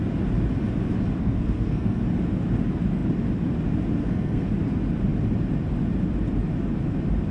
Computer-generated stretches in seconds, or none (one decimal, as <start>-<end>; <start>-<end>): 1.2-2.0; 4.0-4.5